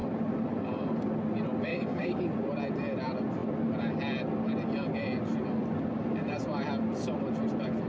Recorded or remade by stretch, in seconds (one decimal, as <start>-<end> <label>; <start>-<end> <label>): 0.0-1.7 recorded; 1.7-2.2 remade; 2.2-7.9 recorded